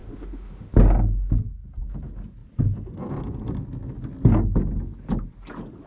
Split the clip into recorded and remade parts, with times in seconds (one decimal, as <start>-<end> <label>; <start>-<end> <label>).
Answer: 0.0-0.7 remade; 0.7-5.9 recorded

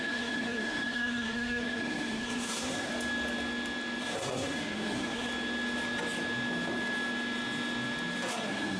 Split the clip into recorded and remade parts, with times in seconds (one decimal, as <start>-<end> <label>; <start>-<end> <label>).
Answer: 0.0-2.9 remade; 2.9-4.0 recorded; 4.0-5.3 remade; 5.3-8.3 recorded; 8.3-8.8 remade

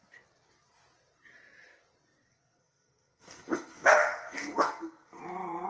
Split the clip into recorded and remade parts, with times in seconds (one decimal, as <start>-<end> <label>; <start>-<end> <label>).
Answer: 0.0-2.3 recorded; 2.3-5.2 remade; 5.2-5.7 recorded

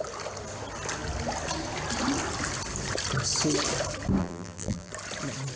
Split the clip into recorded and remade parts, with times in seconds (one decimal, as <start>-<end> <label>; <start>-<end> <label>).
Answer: 0.0-4.2 recorded; 4.2-4.9 remade; 4.9-5.6 recorded

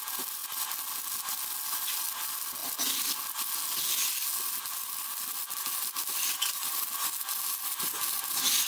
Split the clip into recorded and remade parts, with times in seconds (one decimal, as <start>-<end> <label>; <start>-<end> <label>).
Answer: 0.0-8.7 recorded